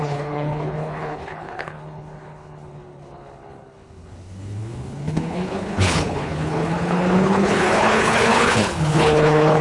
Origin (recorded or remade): remade